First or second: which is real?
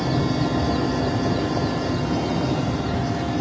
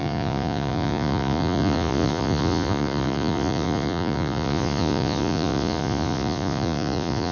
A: first